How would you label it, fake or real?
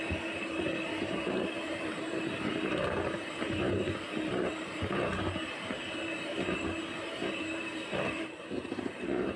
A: fake